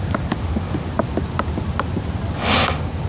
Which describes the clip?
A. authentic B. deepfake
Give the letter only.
A